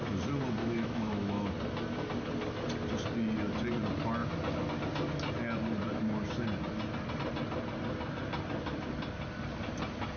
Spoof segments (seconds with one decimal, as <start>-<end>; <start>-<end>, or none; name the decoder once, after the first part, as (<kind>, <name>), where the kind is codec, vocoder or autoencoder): 0.6-1.5 (autoencoder, DAC-VAE)